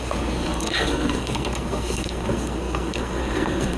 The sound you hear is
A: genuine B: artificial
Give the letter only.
B